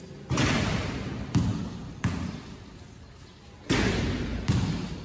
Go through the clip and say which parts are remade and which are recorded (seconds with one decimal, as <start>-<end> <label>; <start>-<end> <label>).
0.0-5.0 recorded